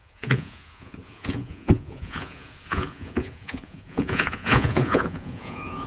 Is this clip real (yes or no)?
no